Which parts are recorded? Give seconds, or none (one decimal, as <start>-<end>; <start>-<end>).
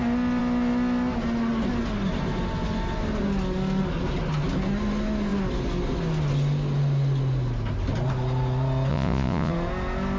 0.0-8.9; 9.5-10.2